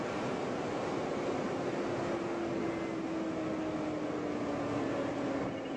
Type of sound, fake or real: real